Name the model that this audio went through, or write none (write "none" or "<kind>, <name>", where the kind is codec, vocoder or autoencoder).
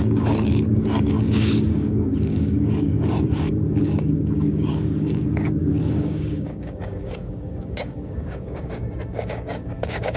codec, DAC